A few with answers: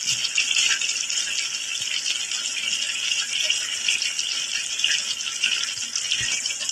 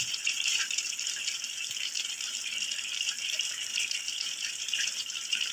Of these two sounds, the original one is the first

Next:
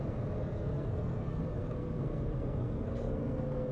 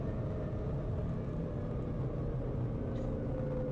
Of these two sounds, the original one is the second